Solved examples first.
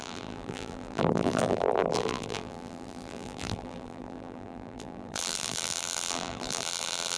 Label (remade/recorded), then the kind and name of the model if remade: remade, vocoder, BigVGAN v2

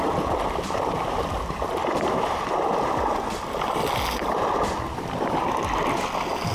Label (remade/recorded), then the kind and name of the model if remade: recorded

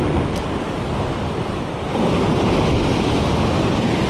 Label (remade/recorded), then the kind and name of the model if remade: recorded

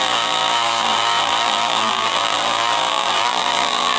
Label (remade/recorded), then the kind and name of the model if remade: remade, vocoder, BigVGAN v2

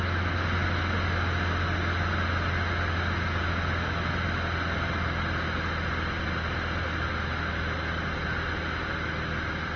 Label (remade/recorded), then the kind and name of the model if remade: recorded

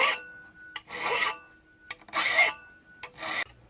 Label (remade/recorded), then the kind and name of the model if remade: remade, vocoder, BigVGAN v2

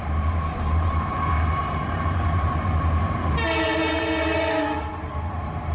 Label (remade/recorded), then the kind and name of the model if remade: remade, vocoder, BigVGAN v2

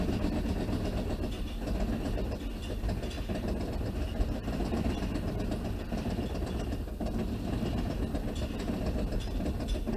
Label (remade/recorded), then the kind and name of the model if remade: recorded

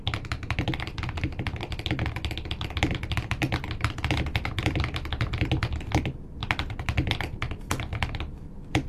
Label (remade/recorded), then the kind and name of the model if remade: remade, vocoder, BigVGAN v2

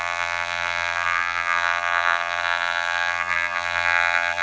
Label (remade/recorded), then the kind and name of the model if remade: remade, vocoder, BigVGAN v2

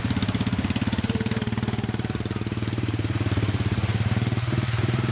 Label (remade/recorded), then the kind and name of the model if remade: remade, vocoder, BigVGAN v2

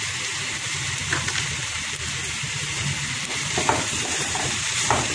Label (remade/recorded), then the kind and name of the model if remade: remade, vocoder, BigVGAN v2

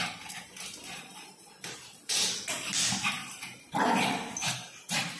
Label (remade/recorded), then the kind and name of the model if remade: remade, vocoder, BigVGAN v2